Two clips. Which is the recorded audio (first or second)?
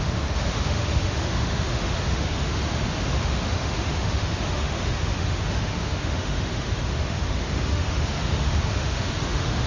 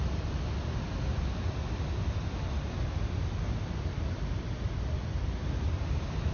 second